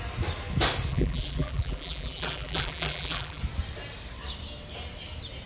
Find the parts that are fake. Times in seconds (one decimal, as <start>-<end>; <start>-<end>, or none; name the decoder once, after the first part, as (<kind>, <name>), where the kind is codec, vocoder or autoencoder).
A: 0.9-3.4 (vocoder, BigVGAN v2)